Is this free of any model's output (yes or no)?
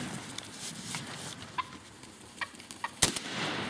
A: yes